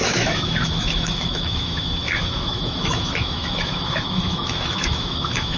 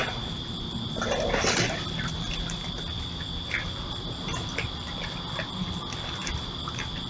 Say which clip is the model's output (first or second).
first